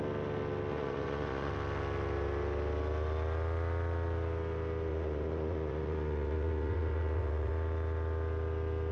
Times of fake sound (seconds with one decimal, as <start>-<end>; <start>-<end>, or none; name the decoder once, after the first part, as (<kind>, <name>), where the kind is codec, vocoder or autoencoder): 0.7-1.5 (vocoder, Vocos); 4.9-7.5